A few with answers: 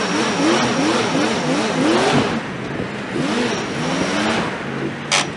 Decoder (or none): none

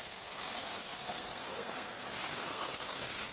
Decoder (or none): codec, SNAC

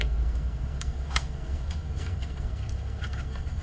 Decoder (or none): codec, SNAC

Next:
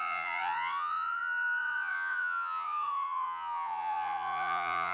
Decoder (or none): vocoder, Vocos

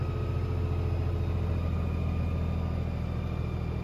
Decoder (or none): none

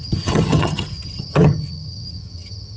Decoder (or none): vocoder, HiFi-GAN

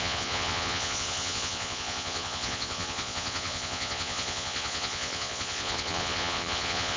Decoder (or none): vocoder, Vocos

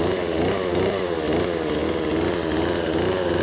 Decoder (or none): none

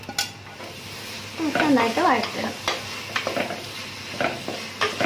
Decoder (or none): none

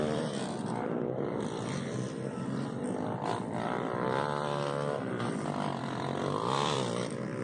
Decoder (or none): vocoder, BigVGAN v2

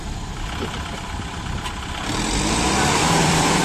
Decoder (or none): vocoder, BigVGAN v2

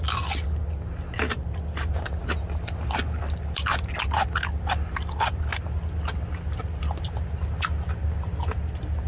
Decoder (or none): none